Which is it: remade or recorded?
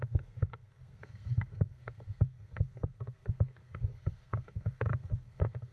remade